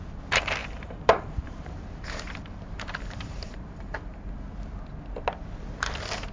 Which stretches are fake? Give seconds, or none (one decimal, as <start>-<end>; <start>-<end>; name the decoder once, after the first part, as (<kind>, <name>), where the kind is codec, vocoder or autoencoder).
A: 0.6-4.4 (vocoder, BigVGAN v2)